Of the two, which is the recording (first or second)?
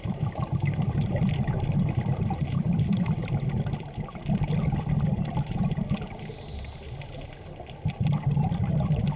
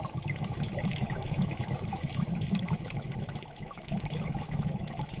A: first